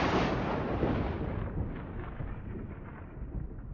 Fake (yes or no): no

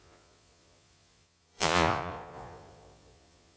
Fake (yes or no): yes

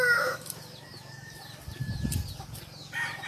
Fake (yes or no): no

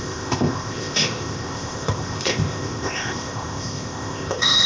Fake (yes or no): yes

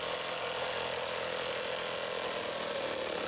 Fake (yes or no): no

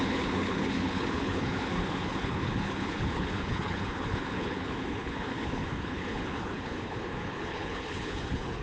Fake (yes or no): yes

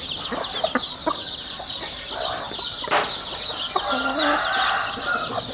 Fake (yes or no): no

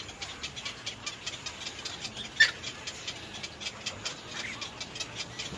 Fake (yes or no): no